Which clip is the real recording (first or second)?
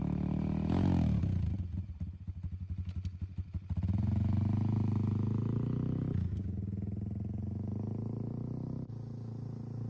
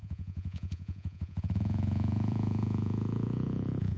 first